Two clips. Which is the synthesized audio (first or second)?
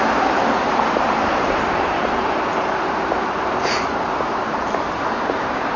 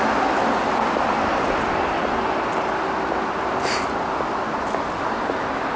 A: first